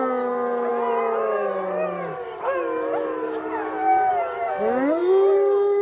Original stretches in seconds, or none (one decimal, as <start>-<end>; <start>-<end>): 0.0-5.8